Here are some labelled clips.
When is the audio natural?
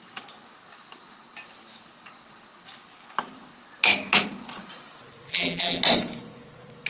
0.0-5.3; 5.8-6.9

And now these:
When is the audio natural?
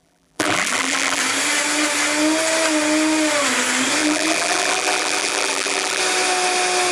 1.2-4.0; 6.0-6.9